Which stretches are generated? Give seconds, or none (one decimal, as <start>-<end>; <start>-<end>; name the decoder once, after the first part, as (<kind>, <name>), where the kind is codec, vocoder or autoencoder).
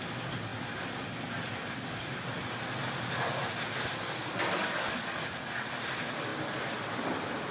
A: none